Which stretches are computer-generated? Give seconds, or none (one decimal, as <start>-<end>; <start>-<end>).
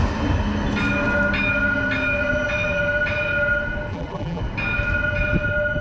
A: 3.9-4.4